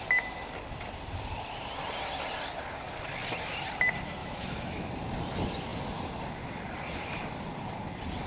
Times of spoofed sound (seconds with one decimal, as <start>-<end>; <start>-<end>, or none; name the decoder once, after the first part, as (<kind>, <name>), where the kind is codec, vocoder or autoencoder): 4.2-4.9 (autoencoder, DAC-VAE)